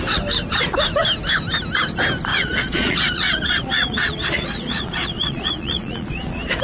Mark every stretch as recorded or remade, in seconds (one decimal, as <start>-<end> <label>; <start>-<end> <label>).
0.0-2.3 recorded; 2.3-6.6 remade

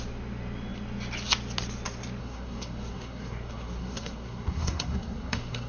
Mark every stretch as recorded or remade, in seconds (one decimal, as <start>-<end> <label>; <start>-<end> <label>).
0.0-2.2 recorded; 2.2-5.7 remade

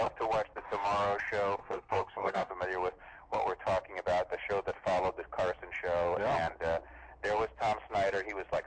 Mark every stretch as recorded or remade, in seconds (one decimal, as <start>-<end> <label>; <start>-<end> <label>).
0.0-1.6 recorded; 1.6-2.5 remade; 2.5-8.7 recorded

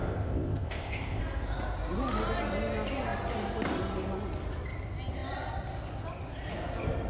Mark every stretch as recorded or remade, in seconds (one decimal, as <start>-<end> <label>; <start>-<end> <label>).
0.0-1.2 remade; 1.2-7.1 recorded

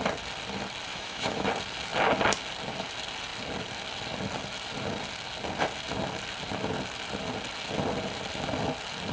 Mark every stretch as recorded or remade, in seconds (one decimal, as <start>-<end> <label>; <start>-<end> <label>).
0.0-0.9 recorded; 0.9-1.5 remade; 1.5-9.1 recorded

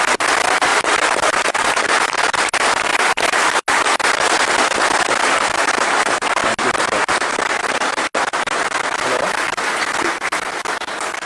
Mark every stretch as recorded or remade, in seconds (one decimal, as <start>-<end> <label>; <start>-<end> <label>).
0.0-0.7 recorded; 0.7-2.5 remade; 2.5-11.3 recorded